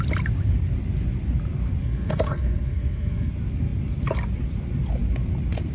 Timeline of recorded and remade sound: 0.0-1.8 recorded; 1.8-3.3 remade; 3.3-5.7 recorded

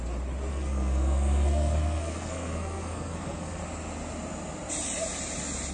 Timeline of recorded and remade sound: 0.0-0.5 recorded; 0.5-3.6 remade; 3.6-5.7 recorded

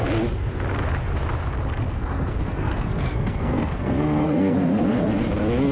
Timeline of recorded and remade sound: 0.0-1.9 recorded; 1.9-5.3 remade; 5.3-5.7 recorded

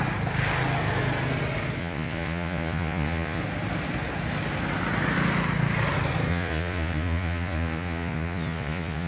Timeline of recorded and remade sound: 0.0-1.8 recorded; 1.8-3.4 remade; 3.4-6.3 recorded; 6.3-9.1 remade

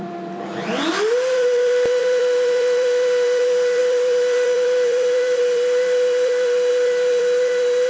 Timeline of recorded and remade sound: 0.0-7.9 remade

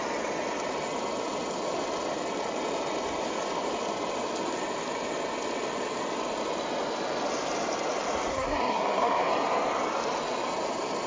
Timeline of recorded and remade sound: 0.0-8.3 recorded; 8.3-9.3 remade; 9.3-11.1 recorded